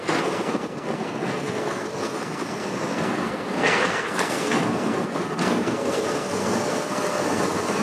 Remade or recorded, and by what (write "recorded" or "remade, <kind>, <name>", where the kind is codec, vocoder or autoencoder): remade, codec, SNAC